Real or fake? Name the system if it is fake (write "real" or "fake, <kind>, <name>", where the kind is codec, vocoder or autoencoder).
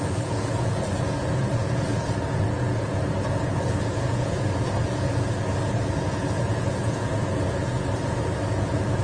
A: fake, vocoder, Vocos